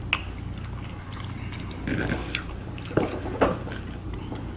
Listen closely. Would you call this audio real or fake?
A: real